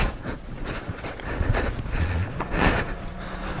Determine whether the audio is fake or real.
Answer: fake